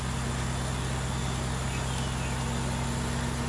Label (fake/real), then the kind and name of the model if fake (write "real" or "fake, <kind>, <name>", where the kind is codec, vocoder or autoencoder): real